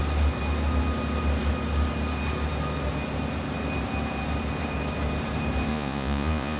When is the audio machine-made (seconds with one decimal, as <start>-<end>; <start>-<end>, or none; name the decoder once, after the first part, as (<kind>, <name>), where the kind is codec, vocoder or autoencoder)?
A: 5.7-6.6 (vocoder, Vocos)